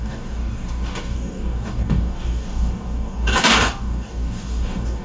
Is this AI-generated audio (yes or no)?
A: yes